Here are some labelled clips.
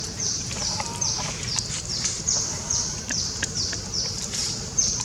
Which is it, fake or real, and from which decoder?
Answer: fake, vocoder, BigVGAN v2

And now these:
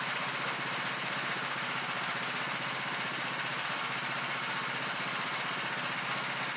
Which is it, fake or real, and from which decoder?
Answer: real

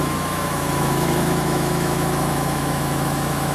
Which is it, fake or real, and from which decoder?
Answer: fake, autoencoder, DAC-VAE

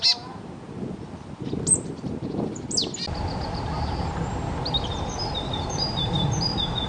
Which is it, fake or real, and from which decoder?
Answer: real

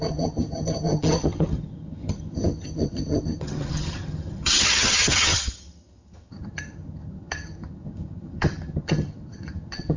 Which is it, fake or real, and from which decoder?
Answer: fake, vocoder, HiFi-GAN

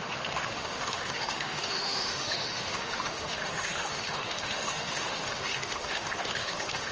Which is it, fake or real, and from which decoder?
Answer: fake, autoencoder, DAC-VAE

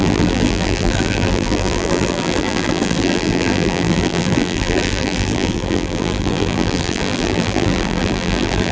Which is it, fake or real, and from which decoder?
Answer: fake, vocoder, BigVGAN v2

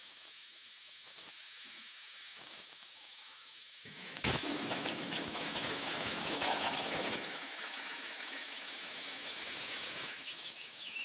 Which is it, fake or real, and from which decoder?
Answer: fake, autoencoder, DAC-VAE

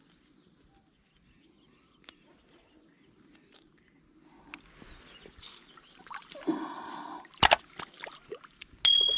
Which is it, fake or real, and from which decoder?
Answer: real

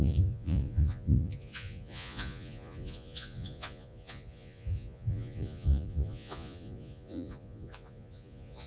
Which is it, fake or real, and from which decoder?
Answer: fake, vocoder, Vocos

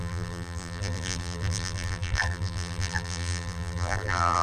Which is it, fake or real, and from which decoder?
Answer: fake, vocoder, BigVGAN v2